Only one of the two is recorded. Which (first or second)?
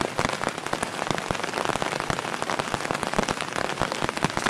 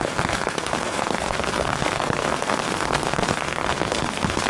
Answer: first